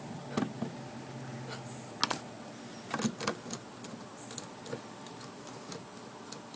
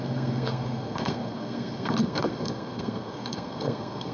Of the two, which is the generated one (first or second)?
second